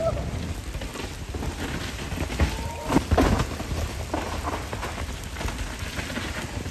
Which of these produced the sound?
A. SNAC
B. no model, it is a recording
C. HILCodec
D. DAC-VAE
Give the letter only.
B